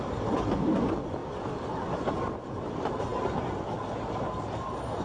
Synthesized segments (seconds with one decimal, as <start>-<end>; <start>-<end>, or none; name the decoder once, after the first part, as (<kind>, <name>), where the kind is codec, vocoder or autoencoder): none